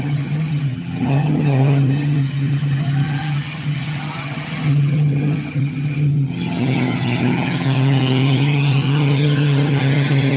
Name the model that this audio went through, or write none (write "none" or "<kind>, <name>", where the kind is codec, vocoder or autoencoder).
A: vocoder, HiFi-GAN